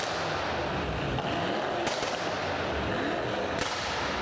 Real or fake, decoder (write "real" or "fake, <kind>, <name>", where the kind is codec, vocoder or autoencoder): real